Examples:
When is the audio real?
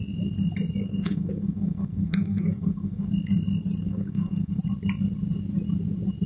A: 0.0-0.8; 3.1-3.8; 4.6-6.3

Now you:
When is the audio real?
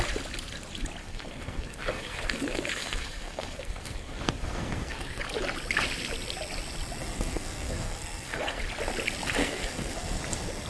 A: 0.0-1.0; 5.2-7.0; 8.6-9.4; 10.2-10.7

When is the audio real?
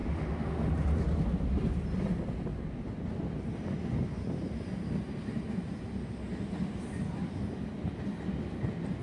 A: 0.7-9.0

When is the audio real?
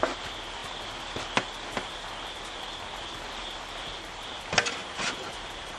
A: 0.0-4.8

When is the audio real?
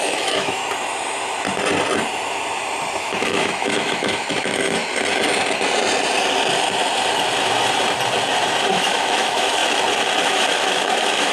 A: 0.6-3.0; 4.8-8.7; 9.6-10.2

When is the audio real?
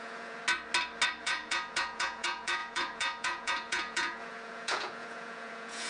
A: 0.4-1.2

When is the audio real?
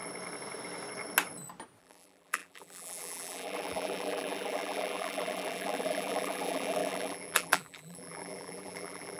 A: 0.0-1.8